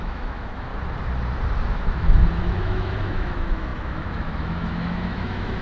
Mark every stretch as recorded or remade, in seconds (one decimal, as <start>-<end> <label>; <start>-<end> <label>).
0.0-0.7 remade; 0.7-1.7 recorded; 1.7-5.6 remade